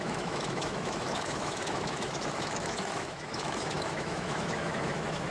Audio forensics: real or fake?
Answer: fake